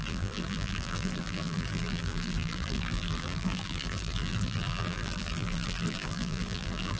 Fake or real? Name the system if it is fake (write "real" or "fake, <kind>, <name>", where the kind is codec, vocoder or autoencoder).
fake, vocoder, BigVGAN v2